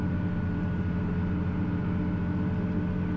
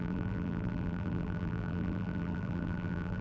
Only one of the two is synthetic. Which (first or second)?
second